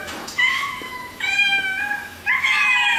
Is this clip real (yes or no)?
no